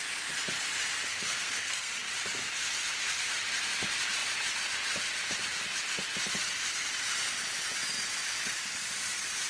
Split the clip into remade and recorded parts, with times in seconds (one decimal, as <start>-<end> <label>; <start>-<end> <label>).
0.0-1.1 recorded; 1.1-1.9 remade; 1.9-9.5 recorded